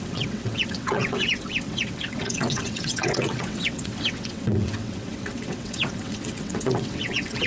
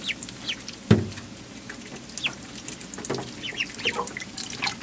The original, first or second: second